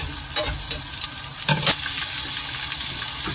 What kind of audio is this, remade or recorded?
recorded